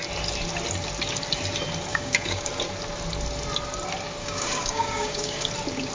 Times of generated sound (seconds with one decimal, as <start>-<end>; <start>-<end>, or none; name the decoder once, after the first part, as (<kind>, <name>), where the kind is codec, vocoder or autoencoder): 1.9-2.5 (codec, DAC); 4.2-5.5